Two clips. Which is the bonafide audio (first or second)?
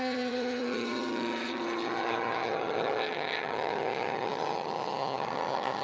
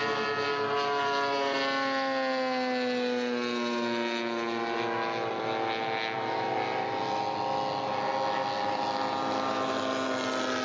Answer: second